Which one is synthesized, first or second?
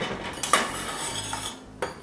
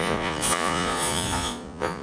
second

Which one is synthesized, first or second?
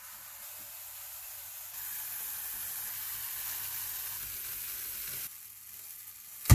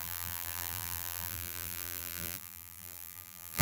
second